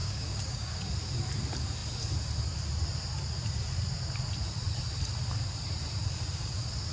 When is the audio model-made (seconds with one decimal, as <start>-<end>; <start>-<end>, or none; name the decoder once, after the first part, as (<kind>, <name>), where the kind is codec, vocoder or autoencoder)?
0.0-0.9 (codec, DAC)

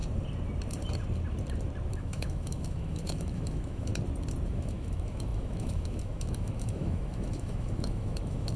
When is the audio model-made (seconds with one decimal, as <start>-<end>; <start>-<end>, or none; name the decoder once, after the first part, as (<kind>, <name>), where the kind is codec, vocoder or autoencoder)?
1.9-3.9 (autoencoder, DAC-VAE); 4.5-8.6

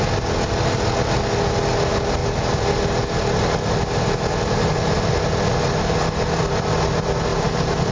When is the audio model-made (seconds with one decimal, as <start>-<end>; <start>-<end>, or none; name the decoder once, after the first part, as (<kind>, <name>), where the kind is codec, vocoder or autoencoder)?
7.3-7.9 (vocoder, BigVGAN v2)

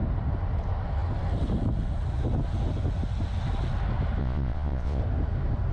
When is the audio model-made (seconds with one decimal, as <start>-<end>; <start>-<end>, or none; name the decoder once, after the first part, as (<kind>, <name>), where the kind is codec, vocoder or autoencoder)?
4.2-5.0 (vocoder, Vocos)